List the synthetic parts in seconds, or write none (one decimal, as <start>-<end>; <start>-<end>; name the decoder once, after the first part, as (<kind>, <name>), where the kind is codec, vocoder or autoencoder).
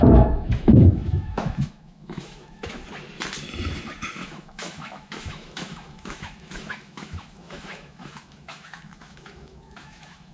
0.0-2.8 (autoencoder, DAC-VAE); 4.1-10.3